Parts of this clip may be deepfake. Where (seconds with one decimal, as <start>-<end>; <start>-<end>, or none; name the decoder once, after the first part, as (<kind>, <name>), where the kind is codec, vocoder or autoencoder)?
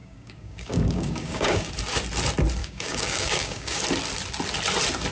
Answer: 0.0-1.7 (codec, DAC); 2.6-3.8